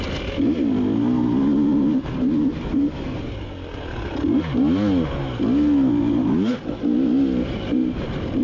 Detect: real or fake real